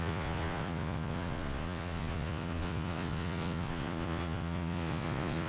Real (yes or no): no